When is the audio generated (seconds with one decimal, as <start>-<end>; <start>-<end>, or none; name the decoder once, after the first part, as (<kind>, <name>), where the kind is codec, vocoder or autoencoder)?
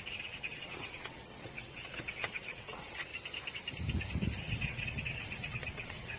0.0-3.1 (vocoder, WaveNeXt); 4.4-6.2